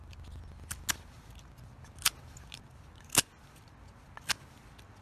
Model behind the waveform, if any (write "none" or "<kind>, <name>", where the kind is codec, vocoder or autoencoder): none